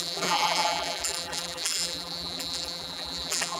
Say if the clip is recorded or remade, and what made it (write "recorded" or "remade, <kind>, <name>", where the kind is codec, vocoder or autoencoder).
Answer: remade, vocoder, BigVGAN v2